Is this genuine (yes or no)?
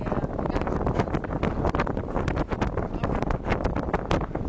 yes